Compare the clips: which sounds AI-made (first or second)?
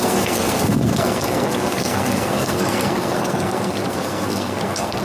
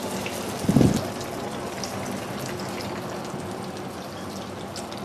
first